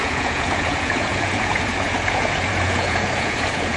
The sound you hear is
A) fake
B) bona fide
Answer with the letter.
A